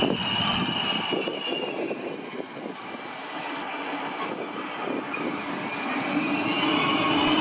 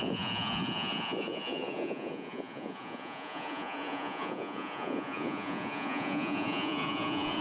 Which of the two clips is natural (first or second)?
first